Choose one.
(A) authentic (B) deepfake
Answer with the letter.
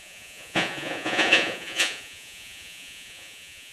B